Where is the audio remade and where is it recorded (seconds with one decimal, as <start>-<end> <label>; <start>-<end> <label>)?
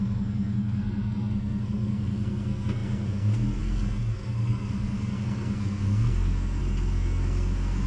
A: 0.0-7.9 remade